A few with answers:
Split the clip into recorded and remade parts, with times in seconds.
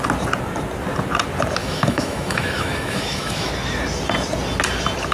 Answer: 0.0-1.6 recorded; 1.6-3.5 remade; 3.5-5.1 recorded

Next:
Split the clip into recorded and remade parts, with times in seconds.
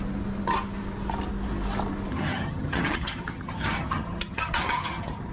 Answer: 0.0-2.1 recorded; 2.1-5.3 remade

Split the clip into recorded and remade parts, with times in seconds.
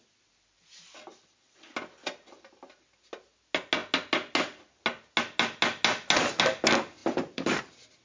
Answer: 0.0-7.0 recorded; 7.0-7.6 remade; 7.6-8.0 recorded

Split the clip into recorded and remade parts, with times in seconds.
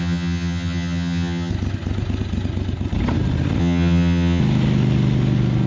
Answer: 0.0-1.5 remade; 1.5-3.6 recorded; 3.6-4.4 remade; 4.4-5.7 recorded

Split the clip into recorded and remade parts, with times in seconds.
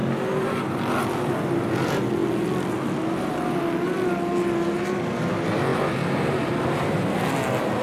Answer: 0.0-1.3 remade; 1.3-5.7 recorded; 5.7-7.2 remade; 7.2-7.8 recorded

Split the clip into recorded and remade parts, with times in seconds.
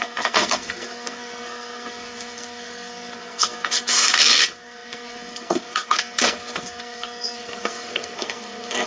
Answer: 0.0-8.9 remade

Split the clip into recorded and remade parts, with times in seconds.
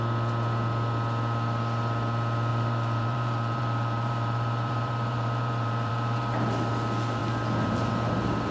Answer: 0.0-2.5 recorded; 2.5-6.5 remade; 6.5-8.5 recorded